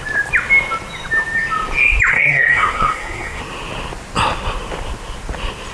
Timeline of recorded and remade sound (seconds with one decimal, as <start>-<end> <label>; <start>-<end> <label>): 0.0-2.1 recorded; 2.1-3.4 remade; 3.4-5.7 recorded